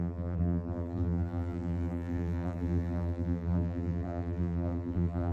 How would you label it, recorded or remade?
remade